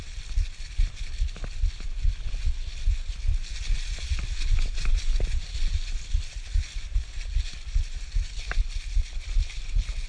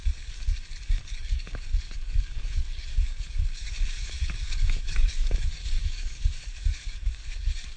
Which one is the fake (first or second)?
second